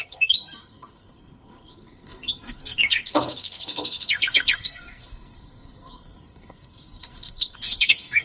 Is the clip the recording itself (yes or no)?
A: no